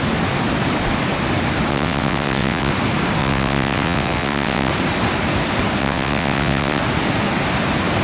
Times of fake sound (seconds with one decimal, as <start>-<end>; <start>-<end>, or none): 1.7-2.7; 3.2-4.7; 5.8-6.8